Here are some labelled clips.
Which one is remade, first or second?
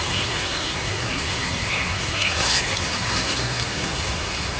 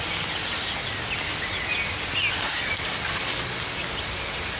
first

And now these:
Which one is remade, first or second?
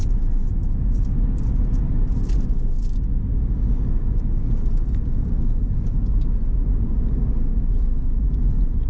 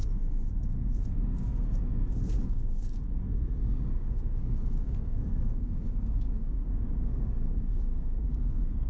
second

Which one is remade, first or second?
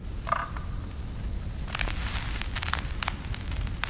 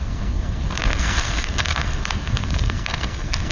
second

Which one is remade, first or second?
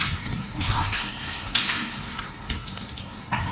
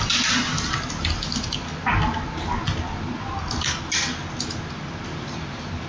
first